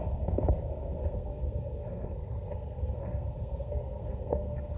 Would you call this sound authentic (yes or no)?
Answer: no